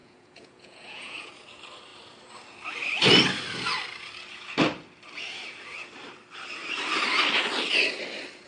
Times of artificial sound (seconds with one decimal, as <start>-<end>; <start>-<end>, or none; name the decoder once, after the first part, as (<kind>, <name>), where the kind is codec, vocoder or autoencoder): 0.0-1.3 (vocoder, Vocos)